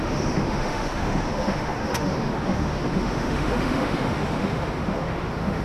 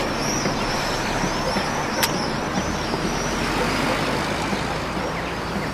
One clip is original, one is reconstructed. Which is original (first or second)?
second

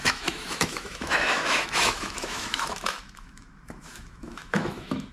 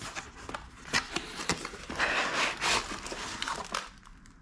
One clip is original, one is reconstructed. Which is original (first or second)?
second